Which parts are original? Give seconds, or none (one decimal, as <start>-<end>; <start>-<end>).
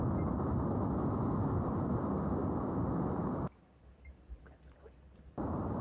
0.0-5.8